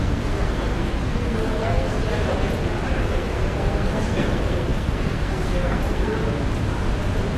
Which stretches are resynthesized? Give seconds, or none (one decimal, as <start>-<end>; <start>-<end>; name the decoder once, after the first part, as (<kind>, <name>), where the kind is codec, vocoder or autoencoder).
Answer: 0.0-2.0 (codec, SNAC); 3.0-6.2